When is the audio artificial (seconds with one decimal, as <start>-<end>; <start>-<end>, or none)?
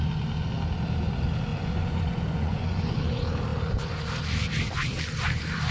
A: 1.5-3.1